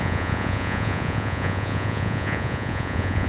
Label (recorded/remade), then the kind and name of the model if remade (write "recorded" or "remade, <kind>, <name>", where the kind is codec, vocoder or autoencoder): remade, vocoder, Vocos